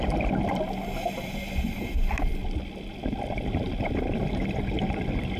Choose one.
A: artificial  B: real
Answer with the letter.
A